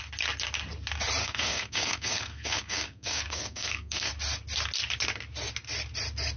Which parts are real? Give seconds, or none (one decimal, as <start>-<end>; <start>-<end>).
0.0-1.2; 4.1-6.4